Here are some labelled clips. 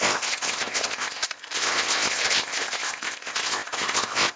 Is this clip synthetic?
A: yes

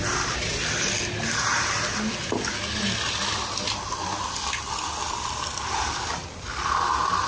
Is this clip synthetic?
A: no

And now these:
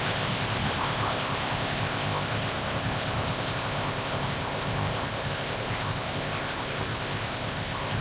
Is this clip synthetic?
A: yes